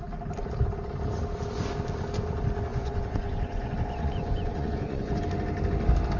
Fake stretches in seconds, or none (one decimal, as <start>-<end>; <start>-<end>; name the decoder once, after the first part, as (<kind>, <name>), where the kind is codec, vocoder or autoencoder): 2.7-5.2 (vocoder, Vocos)